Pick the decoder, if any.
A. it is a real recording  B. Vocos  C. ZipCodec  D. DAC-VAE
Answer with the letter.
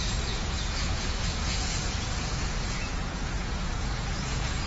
B